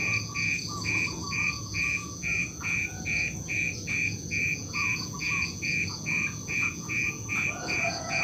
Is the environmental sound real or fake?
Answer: fake